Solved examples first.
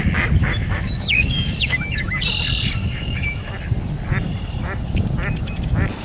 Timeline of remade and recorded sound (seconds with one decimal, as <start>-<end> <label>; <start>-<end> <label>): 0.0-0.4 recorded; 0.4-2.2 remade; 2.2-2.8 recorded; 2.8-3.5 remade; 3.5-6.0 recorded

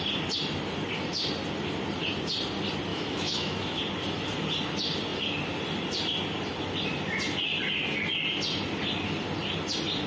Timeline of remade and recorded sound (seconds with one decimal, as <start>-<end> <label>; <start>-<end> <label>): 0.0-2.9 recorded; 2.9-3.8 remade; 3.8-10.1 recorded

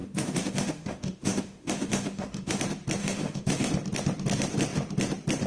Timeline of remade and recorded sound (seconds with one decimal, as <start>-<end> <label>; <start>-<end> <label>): 0.0-2.6 remade; 2.6-3.0 recorded; 3.0-3.7 remade; 3.7-5.5 recorded

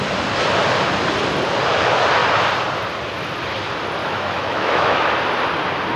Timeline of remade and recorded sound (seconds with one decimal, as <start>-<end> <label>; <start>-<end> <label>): 0.0-4.0 recorded; 4.0-5.1 remade; 5.1-6.0 recorded

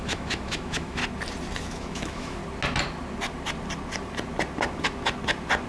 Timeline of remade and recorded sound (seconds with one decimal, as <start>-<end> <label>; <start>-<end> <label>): 0.0-1.0 remade; 1.0-1.6 recorded; 1.6-2.4 remade; 2.4-5.7 recorded